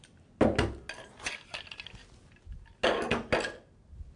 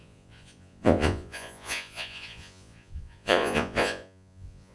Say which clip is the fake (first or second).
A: second